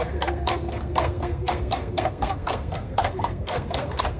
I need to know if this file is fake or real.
fake